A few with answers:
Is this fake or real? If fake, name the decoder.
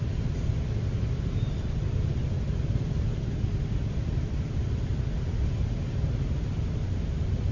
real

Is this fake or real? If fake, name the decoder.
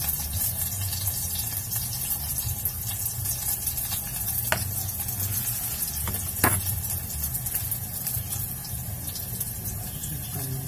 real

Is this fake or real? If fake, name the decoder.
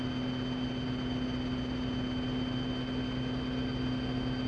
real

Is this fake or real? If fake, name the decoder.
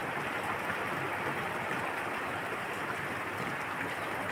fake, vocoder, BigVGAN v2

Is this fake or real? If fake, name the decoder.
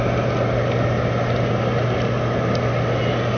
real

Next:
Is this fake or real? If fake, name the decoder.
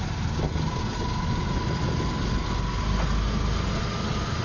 real